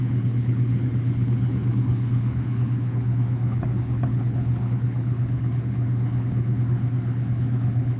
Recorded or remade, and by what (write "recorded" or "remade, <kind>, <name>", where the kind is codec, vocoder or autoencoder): remade, codec, HILCodec